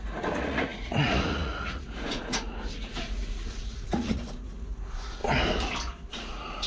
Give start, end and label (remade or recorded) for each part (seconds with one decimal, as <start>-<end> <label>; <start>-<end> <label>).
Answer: 0.0-5.2 remade; 5.2-6.1 recorded; 6.1-6.7 remade